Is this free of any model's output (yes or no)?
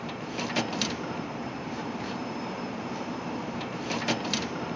no